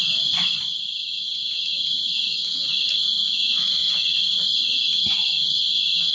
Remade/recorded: recorded